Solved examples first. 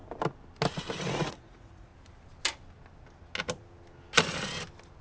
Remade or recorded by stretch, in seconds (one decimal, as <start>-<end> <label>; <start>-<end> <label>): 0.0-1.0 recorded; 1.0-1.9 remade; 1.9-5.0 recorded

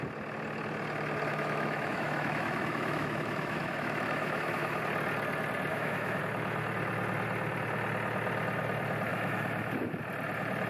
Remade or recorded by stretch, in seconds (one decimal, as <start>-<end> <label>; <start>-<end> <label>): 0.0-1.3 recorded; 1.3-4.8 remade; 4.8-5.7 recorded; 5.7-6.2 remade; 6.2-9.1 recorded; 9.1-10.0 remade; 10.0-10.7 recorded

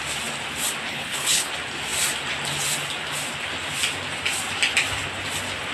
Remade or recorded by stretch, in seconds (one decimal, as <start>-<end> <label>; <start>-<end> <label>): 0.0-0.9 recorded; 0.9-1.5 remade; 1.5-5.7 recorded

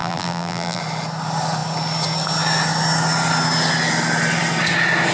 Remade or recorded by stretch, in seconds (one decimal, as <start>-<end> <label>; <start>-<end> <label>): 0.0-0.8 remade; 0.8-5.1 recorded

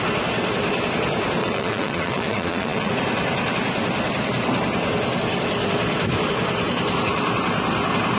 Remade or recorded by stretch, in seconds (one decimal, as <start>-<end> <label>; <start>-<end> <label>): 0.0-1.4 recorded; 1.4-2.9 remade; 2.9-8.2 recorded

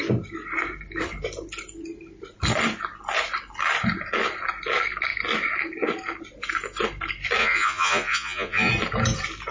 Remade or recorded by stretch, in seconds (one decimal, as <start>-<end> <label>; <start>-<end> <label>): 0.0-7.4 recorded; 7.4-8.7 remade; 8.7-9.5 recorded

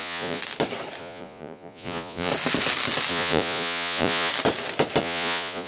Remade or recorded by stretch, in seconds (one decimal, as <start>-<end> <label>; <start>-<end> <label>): 0.0-0.4 remade; 0.4-1.0 recorded; 1.0-2.3 remade; 2.3-3.1 recorded; 3.1-4.3 remade; 4.3-5.0 recorded; 5.0-5.7 remade

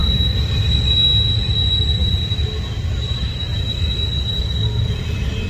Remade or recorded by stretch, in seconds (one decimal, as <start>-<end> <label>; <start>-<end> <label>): 0.0-5.5 recorded